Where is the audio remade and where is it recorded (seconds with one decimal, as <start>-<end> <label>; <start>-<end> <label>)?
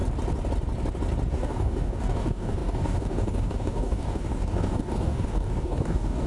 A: 0.0-1.3 recorded; 1.3-6.3 remade